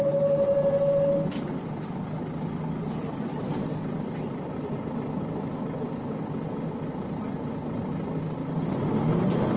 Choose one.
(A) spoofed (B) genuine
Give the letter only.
B